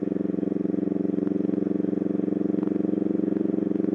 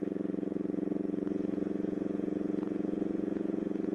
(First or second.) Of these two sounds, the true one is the first